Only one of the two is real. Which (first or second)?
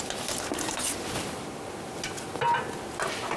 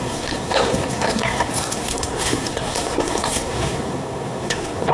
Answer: first